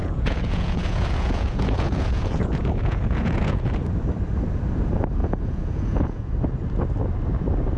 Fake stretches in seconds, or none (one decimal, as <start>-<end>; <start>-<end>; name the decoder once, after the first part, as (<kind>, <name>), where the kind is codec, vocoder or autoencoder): 0.0-3.7 (vocoder, Vocos); 5.2-6.3

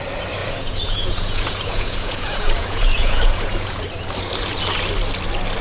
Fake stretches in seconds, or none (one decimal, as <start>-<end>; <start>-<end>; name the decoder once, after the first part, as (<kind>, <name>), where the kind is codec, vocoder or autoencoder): 0.4-3.8 (vocoder, Vocos)

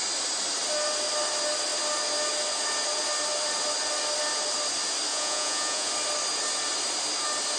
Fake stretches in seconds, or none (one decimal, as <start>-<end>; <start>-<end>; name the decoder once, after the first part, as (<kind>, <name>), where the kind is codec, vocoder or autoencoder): 5.1-5.9 (vocoder, Vocos)